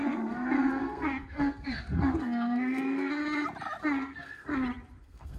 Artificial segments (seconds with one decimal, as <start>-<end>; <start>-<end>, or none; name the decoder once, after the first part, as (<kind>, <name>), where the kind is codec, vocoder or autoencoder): 0.0-3.2 (codec, SNAC); 3.8-4.5; 5.0-5.4